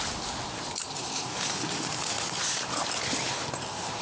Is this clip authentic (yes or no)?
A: yes